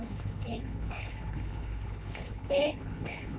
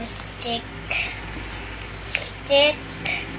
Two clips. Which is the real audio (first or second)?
second